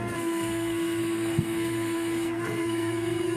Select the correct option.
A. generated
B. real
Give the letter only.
A